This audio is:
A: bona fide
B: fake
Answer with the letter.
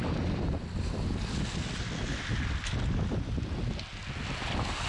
A